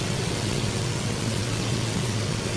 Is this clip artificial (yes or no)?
yes